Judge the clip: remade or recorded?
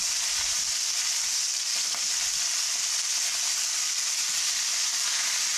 recorded